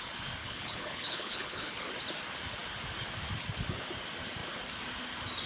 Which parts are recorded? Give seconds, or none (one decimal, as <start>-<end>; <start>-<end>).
0.0-0.4; 1.9-5.5